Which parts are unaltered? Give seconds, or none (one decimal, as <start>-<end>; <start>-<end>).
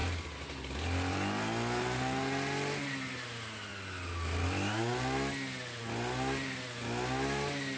0.0-7.8